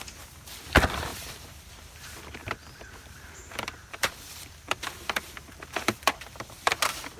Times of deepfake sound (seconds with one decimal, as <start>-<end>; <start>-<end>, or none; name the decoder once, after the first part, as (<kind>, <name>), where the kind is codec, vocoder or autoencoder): 1.1-1.7 (vocoder, BigVGAN v2); 2.4-6.7